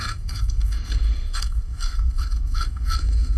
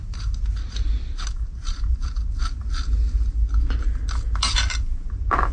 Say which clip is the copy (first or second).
first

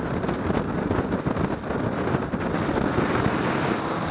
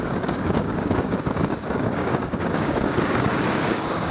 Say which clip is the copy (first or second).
second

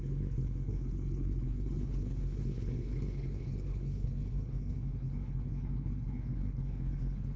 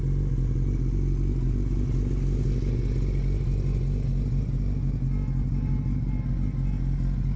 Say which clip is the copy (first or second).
first